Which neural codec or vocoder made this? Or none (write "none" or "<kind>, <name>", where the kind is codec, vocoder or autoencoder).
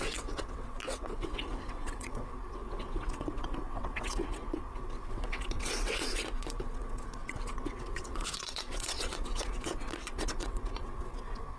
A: vocoder, WaveNeXt